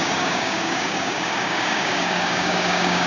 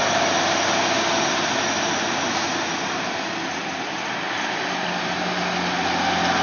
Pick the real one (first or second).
second